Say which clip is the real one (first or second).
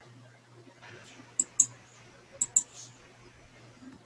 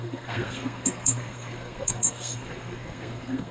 first